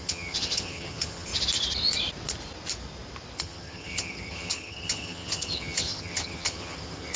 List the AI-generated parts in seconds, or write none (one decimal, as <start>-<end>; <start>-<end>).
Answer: 0.0-1.3; 3.4-7.2